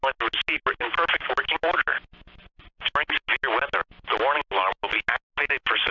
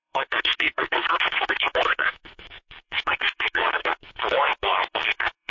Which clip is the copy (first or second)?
second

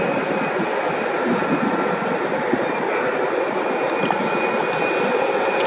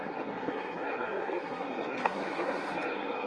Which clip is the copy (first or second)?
second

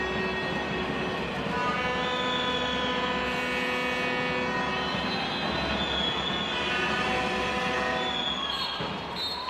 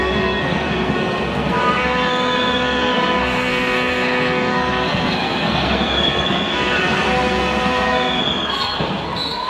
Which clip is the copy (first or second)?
second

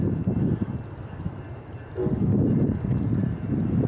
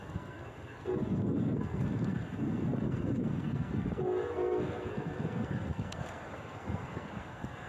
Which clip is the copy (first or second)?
second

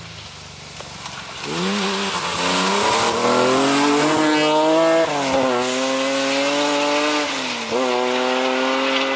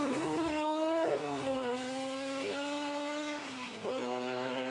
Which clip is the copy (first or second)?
second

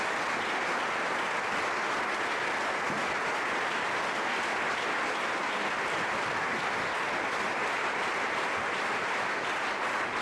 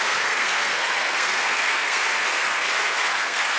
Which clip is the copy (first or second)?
second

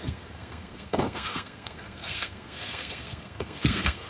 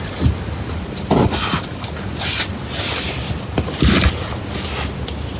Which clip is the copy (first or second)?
first